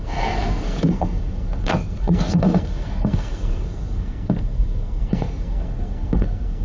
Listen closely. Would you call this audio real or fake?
fake